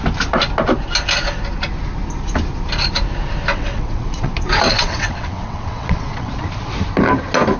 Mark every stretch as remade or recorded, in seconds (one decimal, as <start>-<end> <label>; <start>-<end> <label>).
0.0-3.5 recorded; 3.5-4.3 remade; 4.3-4.7 recorded; 4.7-6.3 remade; 6.3-7.6 recorded

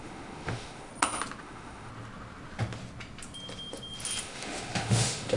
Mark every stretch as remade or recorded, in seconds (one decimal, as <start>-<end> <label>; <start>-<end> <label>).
0.0-0.9 remade; 0.9-1.4 recorded; 1.4-1.9 remade; 1.9-4.2 recorded; 4.2-5.4 remade

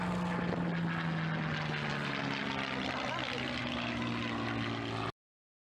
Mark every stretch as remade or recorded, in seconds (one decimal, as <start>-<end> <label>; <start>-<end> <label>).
0.0-5.8 recorded